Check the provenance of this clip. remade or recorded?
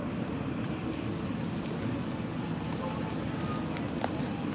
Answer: recorded